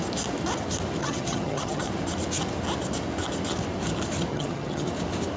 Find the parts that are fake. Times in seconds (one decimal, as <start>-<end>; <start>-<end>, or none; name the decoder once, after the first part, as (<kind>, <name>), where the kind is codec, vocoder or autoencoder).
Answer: 1.0-1.9 (vocoder, HiFi-GAN); 4.3-4.9